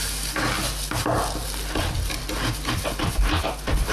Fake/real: real